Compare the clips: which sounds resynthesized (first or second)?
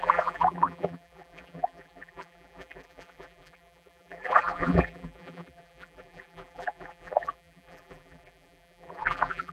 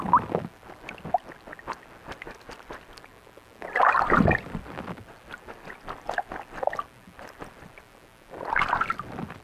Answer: first